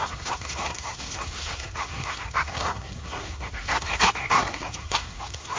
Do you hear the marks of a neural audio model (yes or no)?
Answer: yes